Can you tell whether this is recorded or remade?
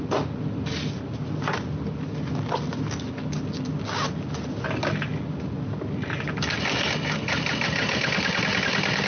recorded